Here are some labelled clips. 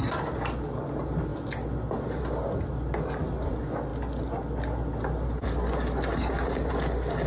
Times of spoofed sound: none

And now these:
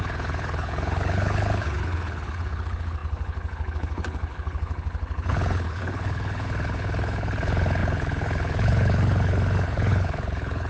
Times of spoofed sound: 0.0-10.7 (codec, HILCodec)